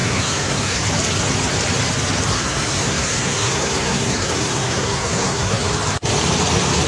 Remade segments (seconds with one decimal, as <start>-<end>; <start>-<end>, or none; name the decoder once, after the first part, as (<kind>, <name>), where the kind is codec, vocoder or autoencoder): 0.0-0.8 (codec, SNAC); 2.3-5.7